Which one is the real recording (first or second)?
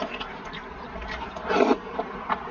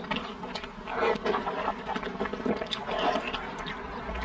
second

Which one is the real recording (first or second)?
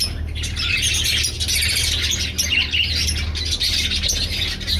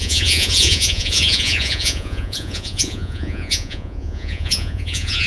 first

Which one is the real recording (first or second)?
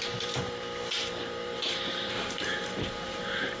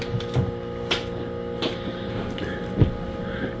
second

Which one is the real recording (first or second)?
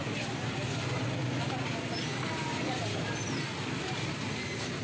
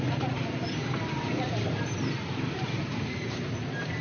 first